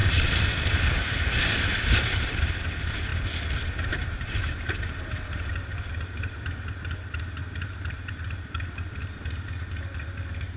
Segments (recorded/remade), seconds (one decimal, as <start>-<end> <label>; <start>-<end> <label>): 0.0-3.1 remade; 3.1-3.9 recorded; 3.9-10.6 remade